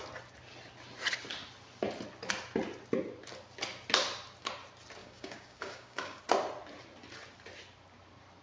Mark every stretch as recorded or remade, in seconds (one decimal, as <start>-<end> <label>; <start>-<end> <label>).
0.0-5.0 recorded; 5.0-6.2 remade; 6.2-8.4 recorded